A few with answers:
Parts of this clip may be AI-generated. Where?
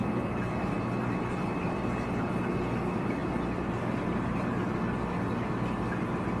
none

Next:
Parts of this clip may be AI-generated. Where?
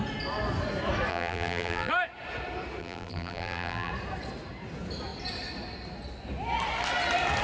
1.1-1.9; 2.8-3.9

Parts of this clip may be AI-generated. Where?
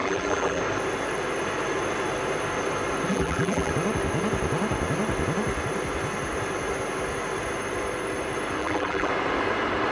0.0-0.6; 3.1-3.7; 8.6-9.1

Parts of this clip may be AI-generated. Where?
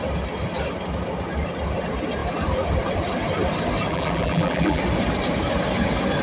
3.9-4.8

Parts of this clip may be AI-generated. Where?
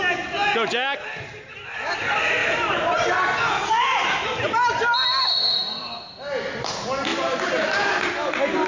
2.4-3.2; 7.1-8.0